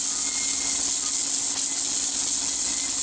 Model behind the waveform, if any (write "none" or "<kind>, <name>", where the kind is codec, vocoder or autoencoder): none